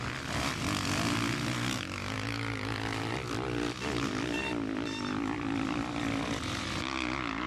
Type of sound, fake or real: real